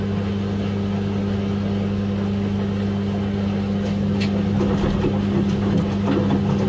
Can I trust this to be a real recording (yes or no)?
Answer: yes